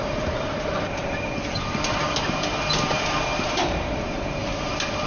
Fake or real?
fake